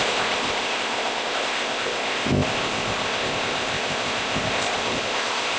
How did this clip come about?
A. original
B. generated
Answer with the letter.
B